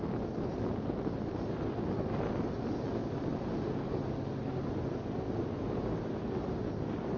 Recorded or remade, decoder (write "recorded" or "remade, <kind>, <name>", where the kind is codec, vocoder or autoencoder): recorded